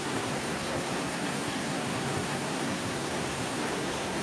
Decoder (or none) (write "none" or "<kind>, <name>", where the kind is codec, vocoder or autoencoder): codec, SNAC